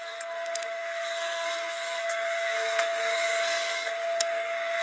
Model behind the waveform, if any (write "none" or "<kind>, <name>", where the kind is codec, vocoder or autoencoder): codec, SNAC